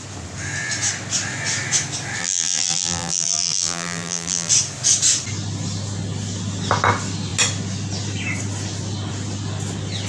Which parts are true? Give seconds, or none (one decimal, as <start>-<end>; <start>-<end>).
0.0-2.2; 4.5-10.1